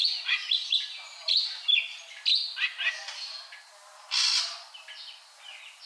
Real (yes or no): yes